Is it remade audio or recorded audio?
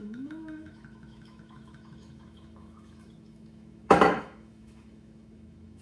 remade